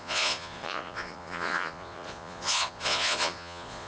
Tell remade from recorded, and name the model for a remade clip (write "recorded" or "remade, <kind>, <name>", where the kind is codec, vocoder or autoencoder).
remade, vocoder, Vocos